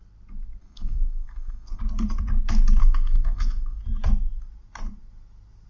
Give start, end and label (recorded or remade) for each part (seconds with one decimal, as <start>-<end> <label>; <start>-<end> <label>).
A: 0.0-0.6 recorded; 0.6-1.8 remade; 1.8-2.8 recorded; 2.8-3.8 remade; 3.8-5.7 recorded